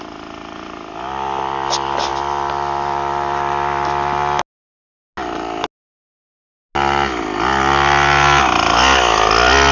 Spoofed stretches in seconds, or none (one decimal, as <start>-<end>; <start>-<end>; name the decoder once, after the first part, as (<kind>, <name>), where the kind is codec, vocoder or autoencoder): none